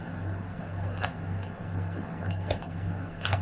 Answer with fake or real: fake